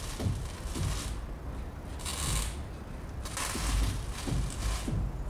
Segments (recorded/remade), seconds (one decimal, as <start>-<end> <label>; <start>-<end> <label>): 0.0-5.3 recorded